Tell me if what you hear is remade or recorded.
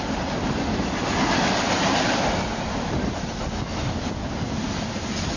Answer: recorded